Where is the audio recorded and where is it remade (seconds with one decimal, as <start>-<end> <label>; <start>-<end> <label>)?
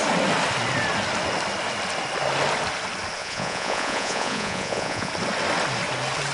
0.0-3.2 recorded; 3.2-5.1 remade; 5.1-6.3 recorded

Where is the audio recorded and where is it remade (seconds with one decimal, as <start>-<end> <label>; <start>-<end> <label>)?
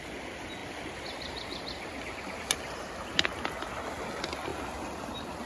0.0-5.5 recorded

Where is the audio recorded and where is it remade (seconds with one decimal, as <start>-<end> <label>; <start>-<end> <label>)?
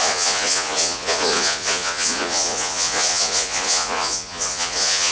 0.0-5.1 remade